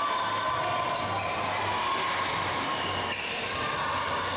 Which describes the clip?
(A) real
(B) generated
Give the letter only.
A